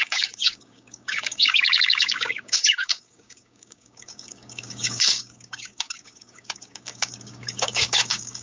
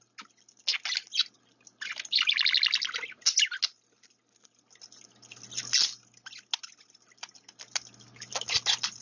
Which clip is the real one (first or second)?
second